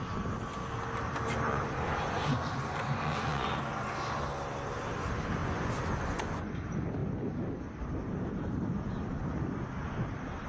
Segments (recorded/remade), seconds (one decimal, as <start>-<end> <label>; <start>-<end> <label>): 0.0-1.5 recorded; 1.5-3.9 remade; 3.9-5.4 recorded; 5.4-6.5 remade; 6.5-10.5 recorded